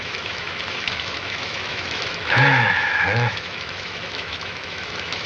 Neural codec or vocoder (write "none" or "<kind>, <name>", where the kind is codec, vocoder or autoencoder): autoencoder, DAC-VAE